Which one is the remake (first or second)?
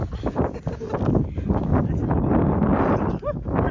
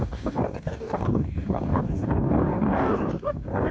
second